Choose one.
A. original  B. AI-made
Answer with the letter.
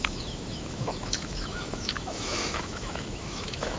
B